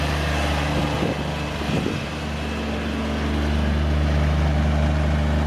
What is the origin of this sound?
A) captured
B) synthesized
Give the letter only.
A